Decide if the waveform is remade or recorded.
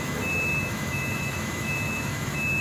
remade